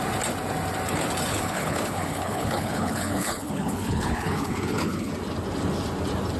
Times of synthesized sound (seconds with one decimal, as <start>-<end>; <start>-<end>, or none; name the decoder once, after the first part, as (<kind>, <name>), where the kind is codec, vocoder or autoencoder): 1.3-5.1 (codec, HILCodec)